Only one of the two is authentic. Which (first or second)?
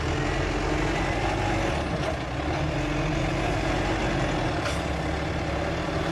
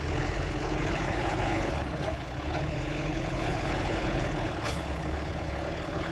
first